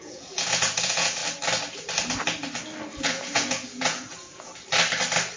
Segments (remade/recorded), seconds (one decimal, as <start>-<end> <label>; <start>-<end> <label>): 0.0-1.2 remade; 1.2-3.0 recorded; 3.0-4.5 remade; 4.5-5.4 recorded